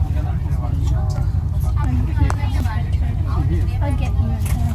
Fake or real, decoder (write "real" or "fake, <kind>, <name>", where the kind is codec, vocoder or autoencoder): real